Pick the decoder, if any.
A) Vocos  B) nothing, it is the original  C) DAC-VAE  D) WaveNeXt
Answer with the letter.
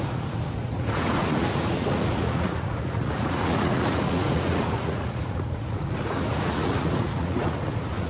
A